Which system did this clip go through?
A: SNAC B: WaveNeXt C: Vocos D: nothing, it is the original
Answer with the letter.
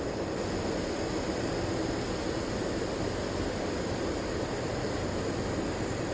D